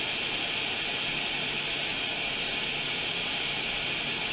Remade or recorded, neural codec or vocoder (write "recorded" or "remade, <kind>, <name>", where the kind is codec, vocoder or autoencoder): recorded